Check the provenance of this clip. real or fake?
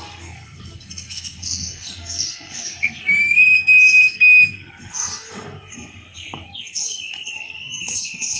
fake